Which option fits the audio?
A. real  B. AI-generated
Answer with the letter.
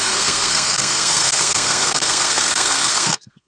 B